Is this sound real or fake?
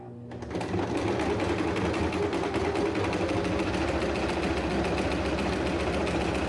real